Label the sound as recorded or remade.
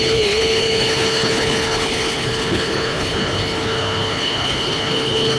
remade